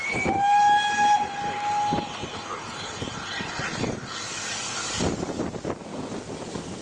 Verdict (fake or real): real